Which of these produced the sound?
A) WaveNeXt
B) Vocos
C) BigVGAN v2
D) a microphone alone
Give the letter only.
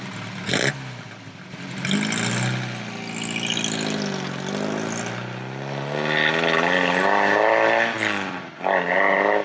D